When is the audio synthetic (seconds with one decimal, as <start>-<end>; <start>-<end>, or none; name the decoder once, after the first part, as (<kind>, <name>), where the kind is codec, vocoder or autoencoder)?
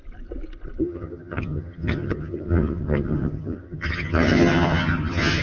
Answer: 0.8-5.4 (vocoder, HiFi-GAN)